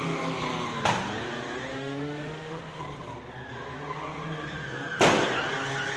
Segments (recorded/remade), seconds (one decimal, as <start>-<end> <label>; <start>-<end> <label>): 0.0-1.7 recorded; 1.7-2.8 remade; 2.8-6.0 recorded